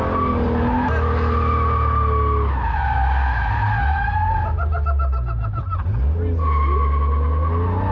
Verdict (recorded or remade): recorded